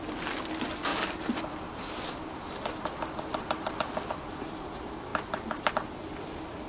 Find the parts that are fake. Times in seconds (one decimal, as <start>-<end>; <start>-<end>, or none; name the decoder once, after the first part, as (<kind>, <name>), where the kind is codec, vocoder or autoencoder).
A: 0.9-3.7 (vocoder, BigVGAN v2); 5.1-5.7